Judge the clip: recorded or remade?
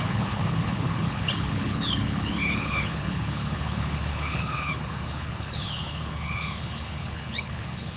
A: remade